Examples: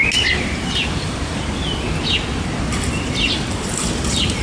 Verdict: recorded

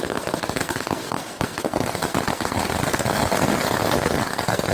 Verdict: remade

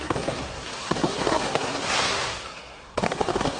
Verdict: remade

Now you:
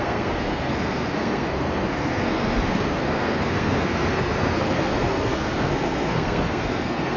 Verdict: remade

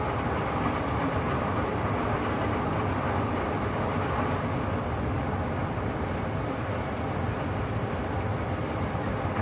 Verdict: recorded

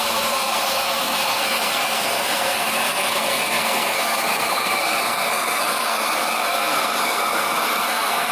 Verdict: remade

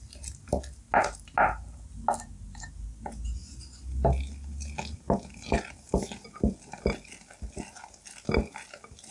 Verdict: recorded